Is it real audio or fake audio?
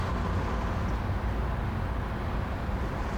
real